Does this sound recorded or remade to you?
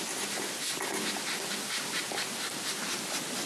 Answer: recorded